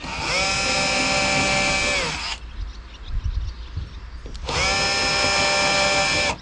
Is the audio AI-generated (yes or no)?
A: no